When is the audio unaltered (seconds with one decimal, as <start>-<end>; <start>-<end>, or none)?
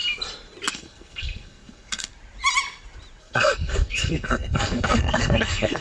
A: 0.0-0.7; 2.1-3.2